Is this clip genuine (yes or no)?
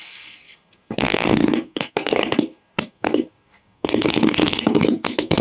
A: no